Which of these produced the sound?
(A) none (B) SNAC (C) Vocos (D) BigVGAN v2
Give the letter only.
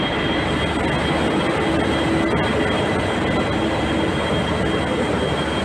A